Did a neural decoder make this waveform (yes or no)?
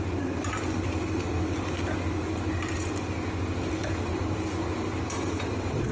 no